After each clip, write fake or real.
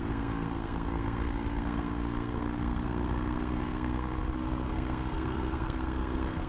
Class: fake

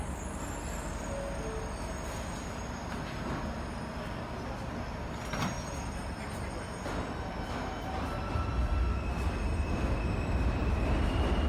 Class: real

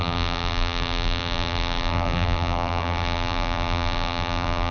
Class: fake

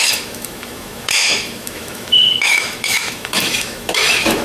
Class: fake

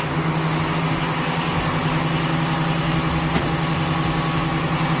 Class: real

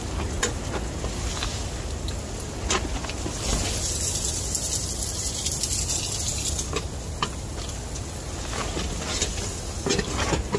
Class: real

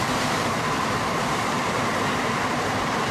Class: fake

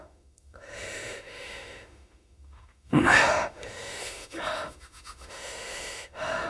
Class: fake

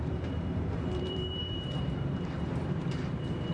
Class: fake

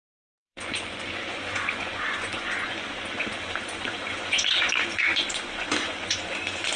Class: fake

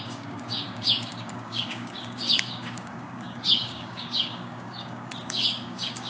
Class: fake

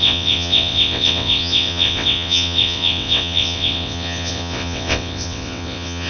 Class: fake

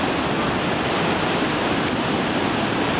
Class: real